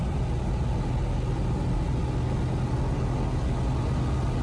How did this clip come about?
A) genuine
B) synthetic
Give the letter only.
A